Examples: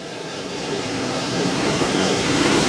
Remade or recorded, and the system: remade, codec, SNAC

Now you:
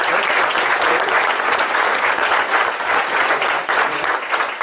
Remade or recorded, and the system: remade, vocoder, Vocos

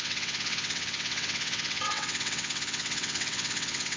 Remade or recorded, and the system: remade, vocoder, WaveNeXt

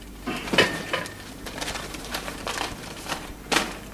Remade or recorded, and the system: remade, vocoder, BigVGAN v2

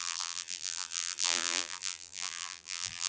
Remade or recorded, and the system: remade, vocoder, BigVGAN v2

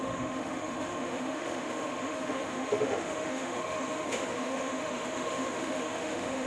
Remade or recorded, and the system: remade, autoencoder, DAC-VAE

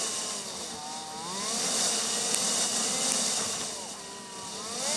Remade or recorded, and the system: recorded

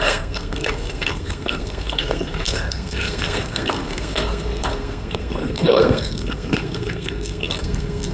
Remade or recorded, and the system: remade, codec, SNAC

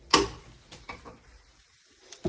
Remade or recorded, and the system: recorded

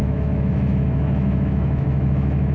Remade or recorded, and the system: remade, autoencoder, DAC-VAE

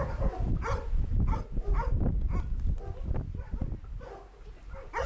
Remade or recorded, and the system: recorded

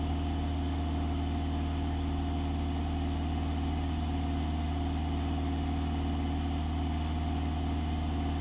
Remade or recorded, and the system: recorded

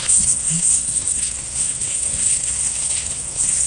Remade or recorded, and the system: remade, codec, SNAC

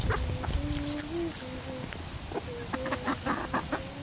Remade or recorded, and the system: recorded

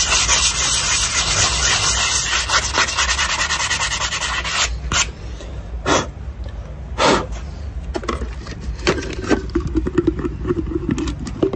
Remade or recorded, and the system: recorded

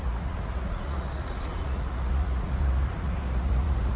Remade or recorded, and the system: remade, vocoder, Vocos